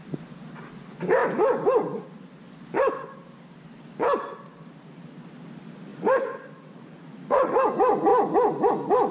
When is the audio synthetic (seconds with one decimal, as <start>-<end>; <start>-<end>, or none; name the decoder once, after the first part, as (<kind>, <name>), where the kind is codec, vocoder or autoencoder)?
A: 5.9-7.5 (vocoder, Vocos)